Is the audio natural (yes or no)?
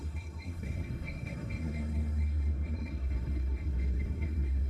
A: no